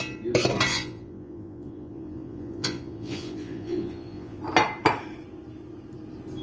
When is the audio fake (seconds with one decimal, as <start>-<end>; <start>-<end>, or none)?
0.7-4.4